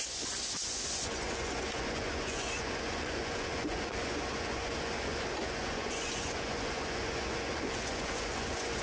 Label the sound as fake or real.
fake